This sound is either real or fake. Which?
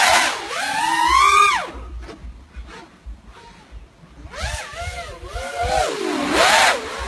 real